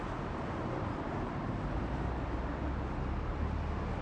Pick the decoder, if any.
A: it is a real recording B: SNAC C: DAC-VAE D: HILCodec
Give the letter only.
A